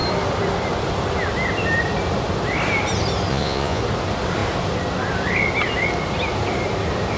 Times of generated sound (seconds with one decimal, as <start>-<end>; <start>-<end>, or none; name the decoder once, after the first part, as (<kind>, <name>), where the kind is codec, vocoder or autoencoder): 3.3-3.8 (vocoder, Vocos)